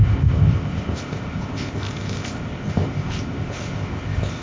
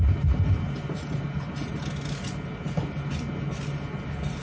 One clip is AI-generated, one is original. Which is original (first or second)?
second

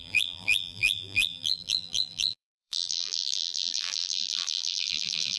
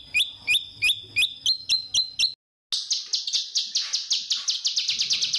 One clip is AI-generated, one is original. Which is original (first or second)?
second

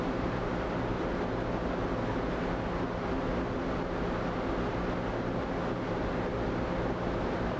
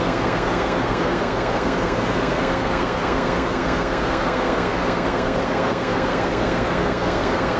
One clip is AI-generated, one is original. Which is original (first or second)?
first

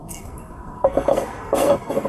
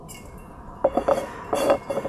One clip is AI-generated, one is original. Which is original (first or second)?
second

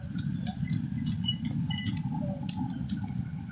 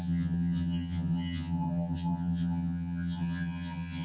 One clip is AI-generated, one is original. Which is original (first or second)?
first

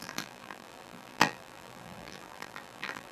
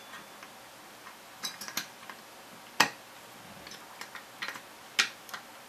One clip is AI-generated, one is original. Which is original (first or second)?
second